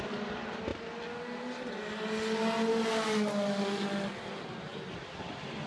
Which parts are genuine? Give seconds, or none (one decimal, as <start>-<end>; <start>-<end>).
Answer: 0.7-4.1